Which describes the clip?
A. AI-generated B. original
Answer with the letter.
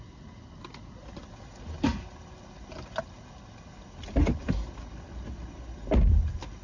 B